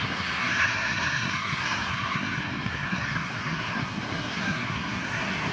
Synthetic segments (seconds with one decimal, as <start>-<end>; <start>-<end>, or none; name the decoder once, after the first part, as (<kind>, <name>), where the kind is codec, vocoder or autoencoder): 0.0-5.5 (codec, SNAC)

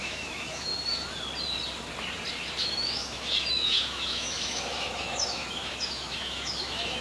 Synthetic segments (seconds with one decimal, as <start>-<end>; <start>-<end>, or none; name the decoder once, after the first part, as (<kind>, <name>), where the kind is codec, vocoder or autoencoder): 0.0-0.7 (autoencoder, DAC-VAE); 2.6-7.0

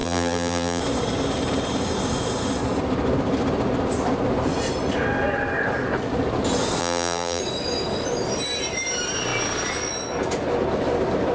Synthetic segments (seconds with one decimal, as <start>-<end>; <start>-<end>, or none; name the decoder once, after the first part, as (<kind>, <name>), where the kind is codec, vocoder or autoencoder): 0.0-0.8 (vocoder, BigVGAN v2); 6.8-7.4

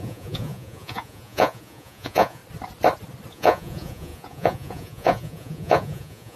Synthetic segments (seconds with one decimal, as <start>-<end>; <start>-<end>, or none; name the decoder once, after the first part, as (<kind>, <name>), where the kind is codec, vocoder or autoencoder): 0.0-2.4 (vocoder, Vocos); 3.3-6.4

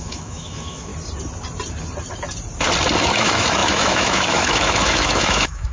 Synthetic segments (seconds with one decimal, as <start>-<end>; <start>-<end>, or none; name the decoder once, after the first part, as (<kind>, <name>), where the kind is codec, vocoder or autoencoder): 0.0-0.9 (autoencoder, DAC-VAE); 3.0-5.7

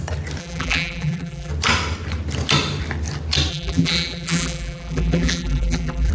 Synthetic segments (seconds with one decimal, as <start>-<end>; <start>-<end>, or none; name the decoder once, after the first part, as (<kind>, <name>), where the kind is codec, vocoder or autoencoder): 0.4-1.5 (vocoder, BigVGAN v2); 3.5-6.1